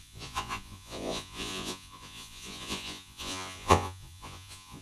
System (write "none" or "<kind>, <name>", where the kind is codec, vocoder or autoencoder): vocoder, Vocos